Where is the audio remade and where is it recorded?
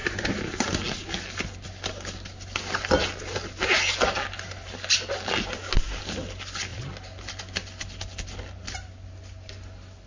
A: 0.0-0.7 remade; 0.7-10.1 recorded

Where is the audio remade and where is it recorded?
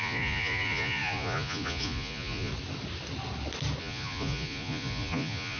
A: 0.0-2.5 remade; 2.5-3.8 recorded; 3.8-5.6 remade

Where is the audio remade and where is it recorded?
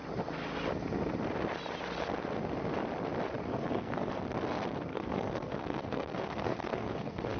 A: 0.0-3.5 recorded; 3.5-4.1 remade; 4.1-4.9 recorded; 4.9-7.4 remade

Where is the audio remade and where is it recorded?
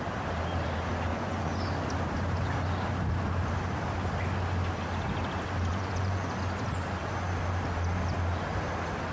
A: 0.0-1.1 recorded; 1.1-1.6 remade; 1.6-5.7 recorded; 5.7-6.3 remade; 6.3-9.1 recorded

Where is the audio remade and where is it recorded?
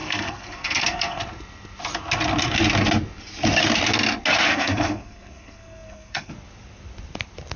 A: 0.0-1.2 remade; 1.2-4.5 recorded; 4.5-6.3 remade; 6.3-7.6 recorded